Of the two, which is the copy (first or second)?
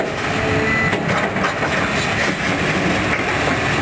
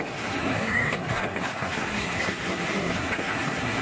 second